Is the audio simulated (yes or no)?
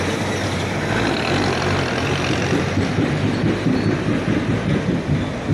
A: no